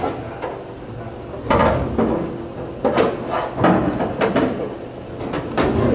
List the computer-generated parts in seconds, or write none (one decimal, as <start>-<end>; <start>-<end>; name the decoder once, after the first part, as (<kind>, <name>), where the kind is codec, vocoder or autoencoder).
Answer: none